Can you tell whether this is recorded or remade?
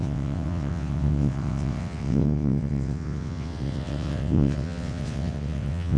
remade